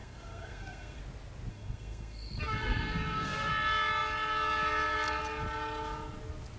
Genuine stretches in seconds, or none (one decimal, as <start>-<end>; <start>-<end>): 1.0-1.5; 3.5-6.6